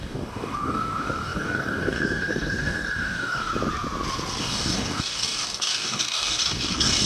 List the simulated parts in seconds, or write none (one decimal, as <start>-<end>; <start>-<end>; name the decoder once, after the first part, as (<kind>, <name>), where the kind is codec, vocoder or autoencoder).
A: 0.0-3.5 (codec, DAC); 4.4-7.1